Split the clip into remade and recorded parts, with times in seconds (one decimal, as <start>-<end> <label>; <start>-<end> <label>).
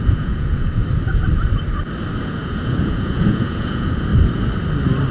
0.0-0.8 remade; 0.8-2.3 recorded; 2.3-4.1 remade; 4.1-5.1 recorded